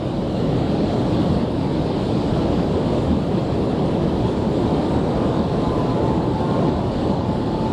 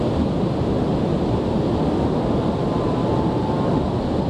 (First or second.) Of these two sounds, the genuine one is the second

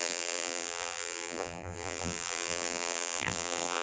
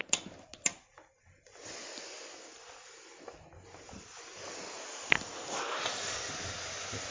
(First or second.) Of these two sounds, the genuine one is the second